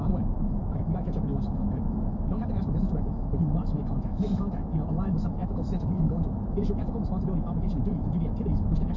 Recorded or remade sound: remade